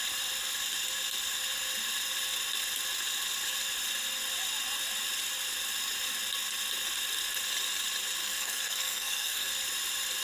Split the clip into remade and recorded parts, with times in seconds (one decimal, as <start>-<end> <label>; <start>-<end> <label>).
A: 0.0-8.2 recorded; 8.2-9.5 remade; 9.5-10.2 recorded

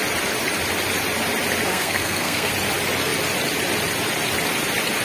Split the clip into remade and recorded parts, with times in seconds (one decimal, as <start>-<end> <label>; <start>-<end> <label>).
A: 0.0-1.7 recorded; 1.7-2.5 remade; 2.5-5.0 recorded

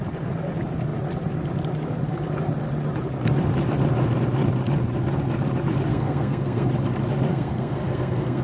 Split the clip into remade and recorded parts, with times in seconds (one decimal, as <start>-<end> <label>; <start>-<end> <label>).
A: 0.0-5.9 recorded; 5.9-6.7 remade; 6.7-7.3 recorded; 7.3-8.4 remade